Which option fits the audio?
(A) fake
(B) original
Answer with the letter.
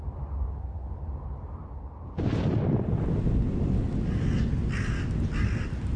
B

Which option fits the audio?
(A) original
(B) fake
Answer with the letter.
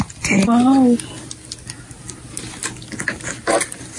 A